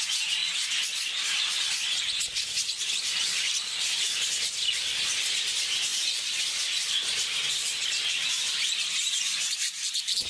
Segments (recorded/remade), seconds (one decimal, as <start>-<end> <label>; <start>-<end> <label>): 0.0-0.4 recorded; 0.4-5.2 remade; 5.2-5.9 recorded; 5.9-7.4 remade; 7.4-8.4 recorded; 8.4-8.9 remade; 8.9-10.3 recorded